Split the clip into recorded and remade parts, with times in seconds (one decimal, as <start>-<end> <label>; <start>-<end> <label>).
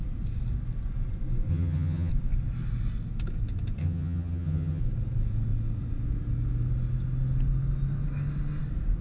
0.0-1.5 recorded; 1.5-2.1 remade; 2.1-3.8 recorded; 3.8-4.8 remade; 4.8-9.0 recorded